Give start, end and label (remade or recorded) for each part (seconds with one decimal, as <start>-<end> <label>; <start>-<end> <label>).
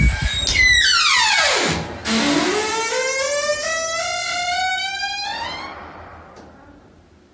0.0-7.3 recorded